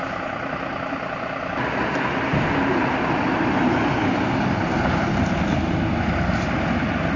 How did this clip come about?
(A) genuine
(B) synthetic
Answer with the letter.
A